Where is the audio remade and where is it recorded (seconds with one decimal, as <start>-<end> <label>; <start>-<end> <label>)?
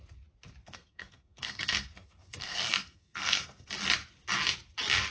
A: 0.0-0.6 recorded; 0.6-3.7 remade; 3.7-5.1 recorded